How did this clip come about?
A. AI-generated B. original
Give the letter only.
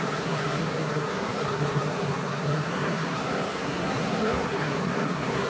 A